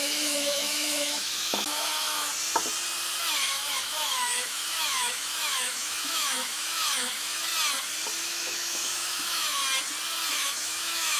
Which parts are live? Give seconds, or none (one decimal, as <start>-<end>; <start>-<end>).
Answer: 2.3-3.3; 7.5-8.2; 9.6-10.3